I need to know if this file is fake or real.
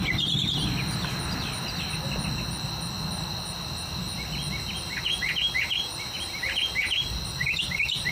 real